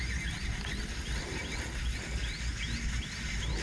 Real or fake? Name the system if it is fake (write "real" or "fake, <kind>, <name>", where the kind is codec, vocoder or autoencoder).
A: real